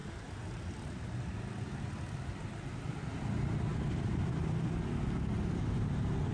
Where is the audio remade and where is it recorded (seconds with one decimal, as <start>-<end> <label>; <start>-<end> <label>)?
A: 0.0-3.7 recorded; 3.7-4.7 remade; 4.7-6.3 recorded